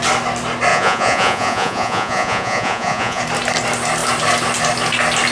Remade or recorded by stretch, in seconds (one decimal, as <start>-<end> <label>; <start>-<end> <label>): 0.0-0.7 recorded; 0.7-3.2 remade; 3.2-5.3 recorded